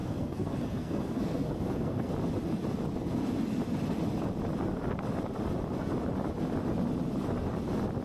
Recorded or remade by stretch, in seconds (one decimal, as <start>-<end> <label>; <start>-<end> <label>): 0.0-2.1 remade; 2.1-8.0 recorded